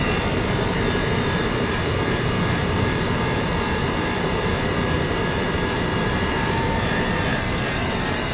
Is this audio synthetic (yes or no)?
yes